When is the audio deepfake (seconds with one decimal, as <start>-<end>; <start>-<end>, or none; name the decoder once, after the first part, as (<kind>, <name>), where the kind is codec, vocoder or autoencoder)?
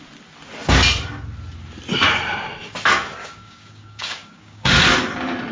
3.2-4.7 (codec, DAC)